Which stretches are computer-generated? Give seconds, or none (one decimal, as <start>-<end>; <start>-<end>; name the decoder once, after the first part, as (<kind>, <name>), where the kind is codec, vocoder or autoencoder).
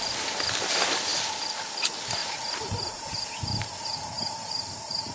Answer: 2.2-5.1 (vocoder, BigVGAN v2)